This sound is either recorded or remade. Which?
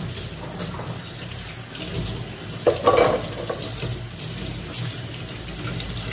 recorded